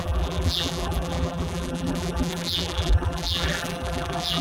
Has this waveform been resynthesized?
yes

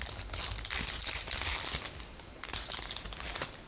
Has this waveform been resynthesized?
no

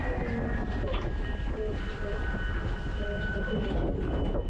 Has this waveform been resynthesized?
no